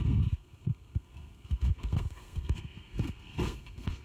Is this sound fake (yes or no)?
yes